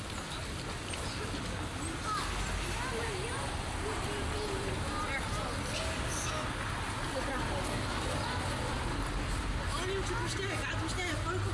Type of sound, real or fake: real